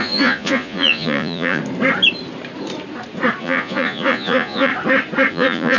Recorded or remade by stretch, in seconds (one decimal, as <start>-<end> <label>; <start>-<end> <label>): 0.0-1.6 remade; 1.6-3.4 recorded; 3.4-4.7 remade; 4.7-5.3 recorded; 5.3-5.8 remade